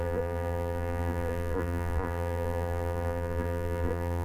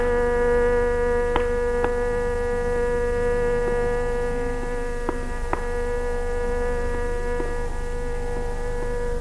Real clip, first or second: second